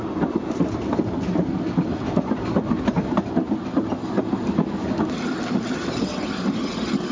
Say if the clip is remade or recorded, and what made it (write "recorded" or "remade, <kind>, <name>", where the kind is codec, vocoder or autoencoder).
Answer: recorded